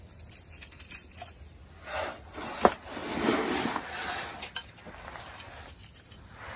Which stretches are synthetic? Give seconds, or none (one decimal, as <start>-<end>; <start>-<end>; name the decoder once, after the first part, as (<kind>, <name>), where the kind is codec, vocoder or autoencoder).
none